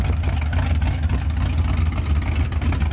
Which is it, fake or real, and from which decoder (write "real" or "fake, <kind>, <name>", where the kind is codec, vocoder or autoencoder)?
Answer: real